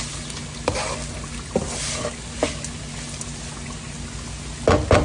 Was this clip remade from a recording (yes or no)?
no